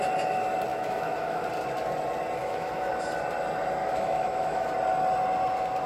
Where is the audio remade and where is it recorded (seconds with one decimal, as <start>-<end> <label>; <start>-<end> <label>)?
0.0-0.7 recorded; 0.7-1.5 remade; 1.5-2.4 recorded; 2.4-2.9 remade; 2.9-3.8 recorded; 3.8-4.7 remade; 4.7-5.9 recorded